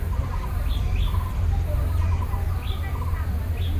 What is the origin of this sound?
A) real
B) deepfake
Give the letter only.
A